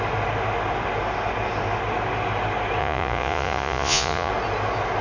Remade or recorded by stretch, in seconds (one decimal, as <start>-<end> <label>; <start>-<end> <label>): 0.0-2.8 recorded; 2.8-4.3 remade; 4.3-5.0 recorded